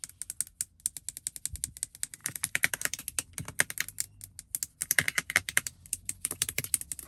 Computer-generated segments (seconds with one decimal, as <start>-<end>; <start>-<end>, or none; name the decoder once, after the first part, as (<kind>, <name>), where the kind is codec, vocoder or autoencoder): 2.2-3.0 (vocoder, BigVGAN v2); 4.8-6.6